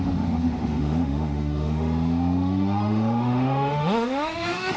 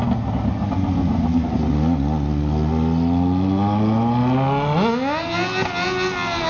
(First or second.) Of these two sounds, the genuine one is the second